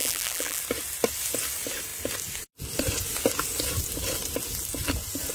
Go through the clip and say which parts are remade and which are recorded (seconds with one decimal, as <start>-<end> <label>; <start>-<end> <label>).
0.0-0.6 remade; 0.6-5.3 recorded